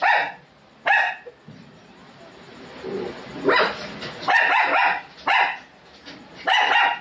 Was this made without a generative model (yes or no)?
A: yes